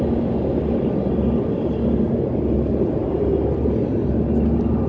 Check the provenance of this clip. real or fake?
real